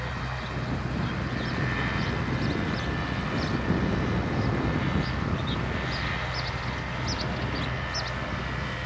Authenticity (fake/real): real